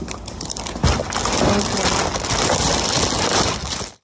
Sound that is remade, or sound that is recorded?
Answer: recorded